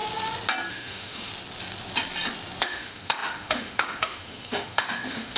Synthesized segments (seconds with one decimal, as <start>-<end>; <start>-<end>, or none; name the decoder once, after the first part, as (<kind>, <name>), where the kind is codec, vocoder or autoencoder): 0.7-1.3 (autoencoder, DAC-VAE); 2.6-5.4